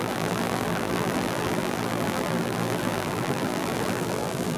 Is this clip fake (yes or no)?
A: yes